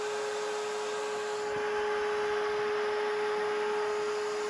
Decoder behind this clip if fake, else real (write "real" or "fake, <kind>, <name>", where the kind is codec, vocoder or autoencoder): real